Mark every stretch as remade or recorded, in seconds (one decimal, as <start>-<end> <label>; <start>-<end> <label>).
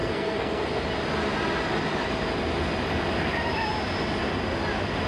0.0-0.7 remade; 0.7-5.1 recorded